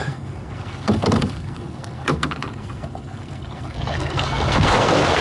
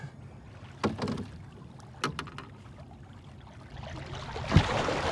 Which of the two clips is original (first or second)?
second